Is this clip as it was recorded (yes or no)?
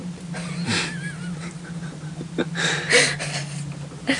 yes